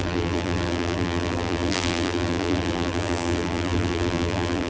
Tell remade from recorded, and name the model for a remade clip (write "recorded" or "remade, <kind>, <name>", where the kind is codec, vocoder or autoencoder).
remade, vocoder, BigVGAN v2